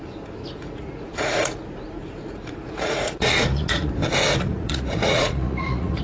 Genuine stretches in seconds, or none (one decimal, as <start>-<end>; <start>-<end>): 0.0-0.4; 3.9-4.3